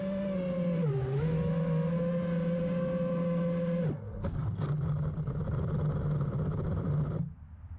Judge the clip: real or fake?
real